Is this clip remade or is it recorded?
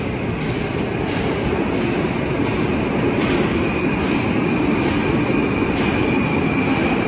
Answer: recorded